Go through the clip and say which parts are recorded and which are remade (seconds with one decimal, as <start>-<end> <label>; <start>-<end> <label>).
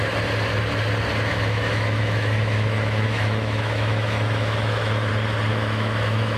0.0-1.3 recorded; 1.3-5.1 remade; 5.1-5.5 recorded; 5.5-6.4 remade